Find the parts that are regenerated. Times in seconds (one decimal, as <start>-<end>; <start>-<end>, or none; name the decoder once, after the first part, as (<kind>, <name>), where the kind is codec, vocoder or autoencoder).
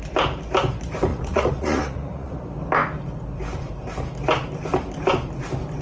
1.1-2.4 (vocoder, Vocos)